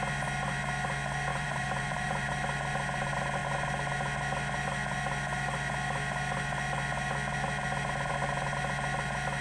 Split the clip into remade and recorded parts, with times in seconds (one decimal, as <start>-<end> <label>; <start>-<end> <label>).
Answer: 0.0-1.3 recorded; 1.3-2.3 remade; 2.3-9.4 recorded